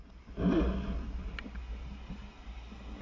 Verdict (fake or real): real